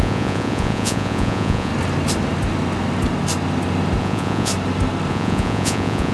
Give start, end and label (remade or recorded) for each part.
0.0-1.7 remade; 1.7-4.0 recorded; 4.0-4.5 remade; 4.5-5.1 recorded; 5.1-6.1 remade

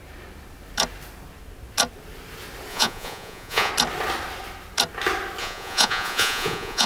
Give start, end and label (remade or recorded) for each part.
0.0-2.7 recorded; 2.7-3.7 remade; 3.7-5.4 recorded; 5.4-6.9 remade

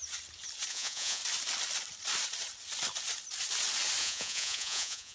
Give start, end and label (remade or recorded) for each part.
0.0-0.7 recorded; 0.7-1.2 remade; 1.2-4.0 recorded; 4.0-5.1 remade

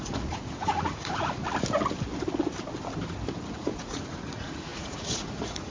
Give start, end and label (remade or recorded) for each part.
0.0-1.4 remade; 1.4-3.5 recorded; 3.5-5.7 remade